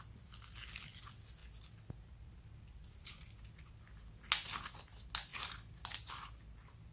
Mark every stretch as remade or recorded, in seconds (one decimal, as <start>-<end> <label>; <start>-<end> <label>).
0.0-6.9 recorded

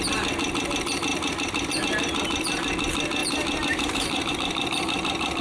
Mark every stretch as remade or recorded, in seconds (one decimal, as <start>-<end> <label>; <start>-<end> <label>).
0.0-1.1 recorded; 1.1-1.7 remade; 1.7-3.2 recorded; 3.2-4.3 remade; 4.3-5.4 recorded

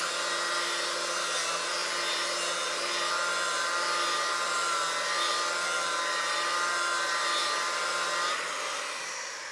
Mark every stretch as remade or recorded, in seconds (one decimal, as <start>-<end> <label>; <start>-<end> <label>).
0.0-9.5 recorded

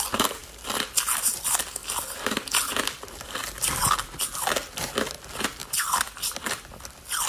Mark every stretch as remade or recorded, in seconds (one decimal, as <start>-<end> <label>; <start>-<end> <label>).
0.0-5.6 recorded; 5.6-6.6 remade; 6.6-7.3 recorded

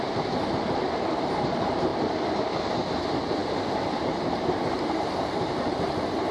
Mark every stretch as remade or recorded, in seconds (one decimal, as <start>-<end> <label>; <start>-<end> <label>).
0.0-1.9 remade; 1.9-2.9 recorded; 2.9-6.3 remade